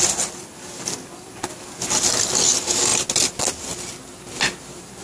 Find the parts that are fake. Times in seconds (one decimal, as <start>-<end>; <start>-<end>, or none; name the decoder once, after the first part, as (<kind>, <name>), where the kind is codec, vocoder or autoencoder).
none